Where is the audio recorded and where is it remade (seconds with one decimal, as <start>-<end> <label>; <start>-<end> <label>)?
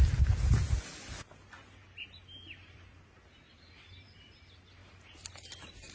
0.0-5.9 recorded